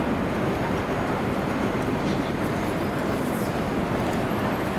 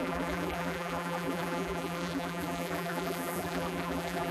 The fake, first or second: second